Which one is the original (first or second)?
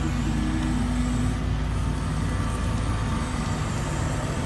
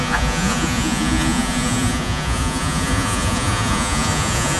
first